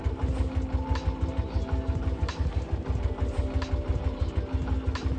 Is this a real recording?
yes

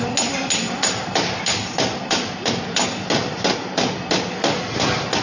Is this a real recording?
yes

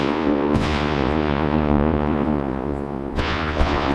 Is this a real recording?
no